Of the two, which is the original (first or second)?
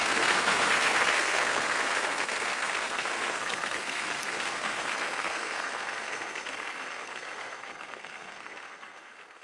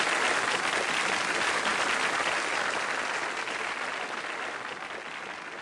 second